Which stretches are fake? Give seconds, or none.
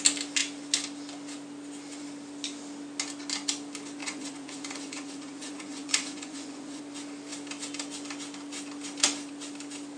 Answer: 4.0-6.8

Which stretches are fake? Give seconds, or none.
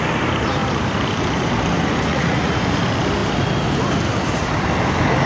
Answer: 2.1-2.6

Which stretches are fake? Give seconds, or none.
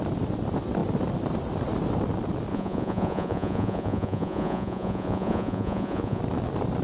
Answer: 2.5-6.2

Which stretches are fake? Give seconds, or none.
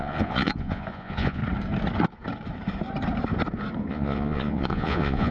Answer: 0.0-1.4; 3.9-5.3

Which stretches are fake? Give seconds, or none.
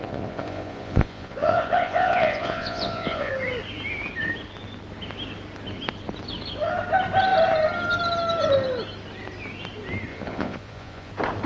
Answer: 0.0-3.3; 10.1-11.1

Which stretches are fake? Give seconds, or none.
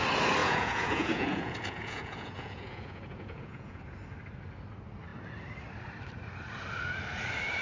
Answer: 0.4-3.8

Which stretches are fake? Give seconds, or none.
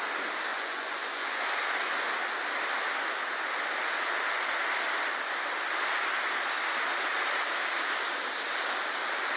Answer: 0.5-1.6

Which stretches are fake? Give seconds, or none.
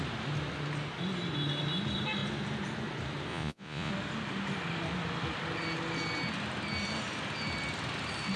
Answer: 3.3-3.9